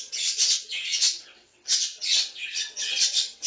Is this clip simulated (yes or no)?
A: yes